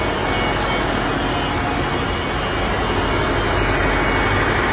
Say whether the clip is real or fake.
real